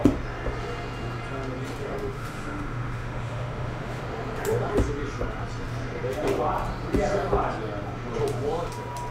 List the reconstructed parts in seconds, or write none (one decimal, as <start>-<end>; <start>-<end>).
1.8-4.0